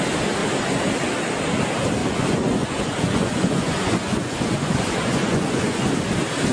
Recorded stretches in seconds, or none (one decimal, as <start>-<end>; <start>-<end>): 0.0-2.0; 5.9-6.5